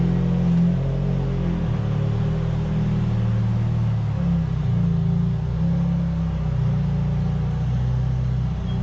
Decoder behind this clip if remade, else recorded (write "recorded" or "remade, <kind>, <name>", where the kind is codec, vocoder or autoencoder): recorded